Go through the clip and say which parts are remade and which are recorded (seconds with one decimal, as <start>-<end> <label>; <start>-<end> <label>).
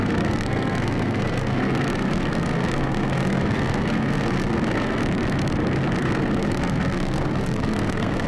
0.0-5.0 remade; 5.0-6.0 recorded; 6.0-8.3 remade